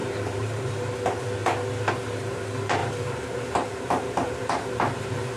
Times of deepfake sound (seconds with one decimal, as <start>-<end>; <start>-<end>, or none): 0.0-0.6; 2.8-4.7